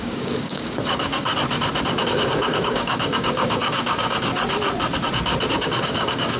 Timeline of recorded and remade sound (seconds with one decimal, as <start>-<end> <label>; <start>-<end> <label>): 0.0-1.3 remade; 1.3-2.0 recorded; 2.0-4.3 remade; 4.3-5.5 recorded; 5.5-6.4 remade